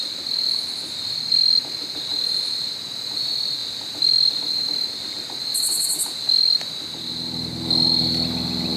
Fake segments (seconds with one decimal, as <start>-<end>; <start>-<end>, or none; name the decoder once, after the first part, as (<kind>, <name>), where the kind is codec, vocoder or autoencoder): none